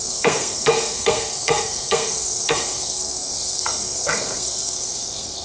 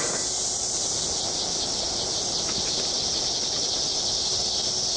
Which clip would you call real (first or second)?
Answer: second